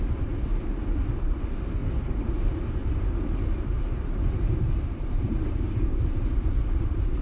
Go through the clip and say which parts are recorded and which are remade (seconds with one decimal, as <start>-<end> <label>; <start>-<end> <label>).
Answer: 0.0-0.5 remade; 0.5-1.2 recorded; 1.2-1.8 remade; 1.8-2.3 recorded; 2.3-7.2 remade